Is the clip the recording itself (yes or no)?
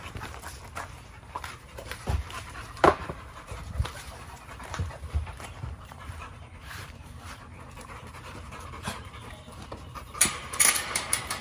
no